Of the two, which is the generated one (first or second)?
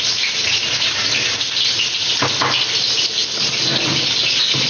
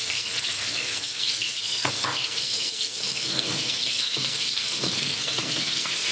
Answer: second